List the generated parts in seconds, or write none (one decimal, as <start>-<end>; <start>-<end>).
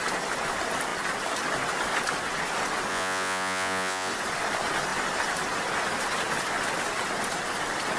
2.9-4.1